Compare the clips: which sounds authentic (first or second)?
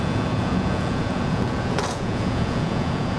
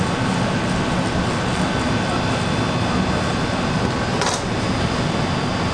second